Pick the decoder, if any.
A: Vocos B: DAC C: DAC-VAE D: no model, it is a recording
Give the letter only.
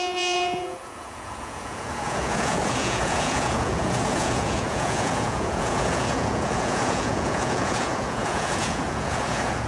A